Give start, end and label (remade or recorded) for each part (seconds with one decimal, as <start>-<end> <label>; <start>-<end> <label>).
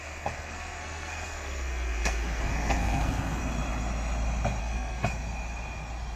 0.0-3.4 remade; 3.4-4.6 recorded; 4.6-5.1 remade; 5.1-6.2 recorded